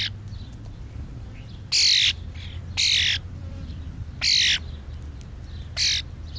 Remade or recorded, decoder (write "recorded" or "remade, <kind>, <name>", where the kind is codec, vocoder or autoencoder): recorded